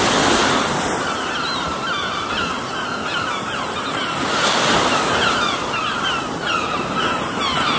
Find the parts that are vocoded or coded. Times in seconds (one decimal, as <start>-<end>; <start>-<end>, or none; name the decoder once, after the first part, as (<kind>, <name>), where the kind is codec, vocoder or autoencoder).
0.0-0.4 (vocoder, BigVGAN v2); 1.2-7.8